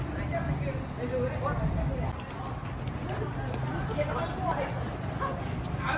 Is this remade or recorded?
recorded